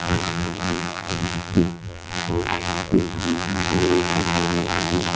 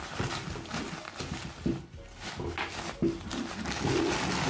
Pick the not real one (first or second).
first